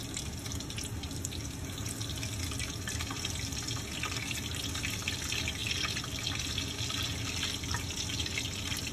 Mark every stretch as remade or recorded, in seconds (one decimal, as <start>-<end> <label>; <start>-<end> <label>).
0.0-8.9 recorded